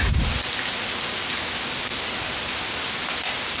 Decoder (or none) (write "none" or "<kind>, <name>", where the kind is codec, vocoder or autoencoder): none